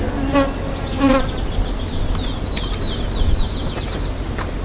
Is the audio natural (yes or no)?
yes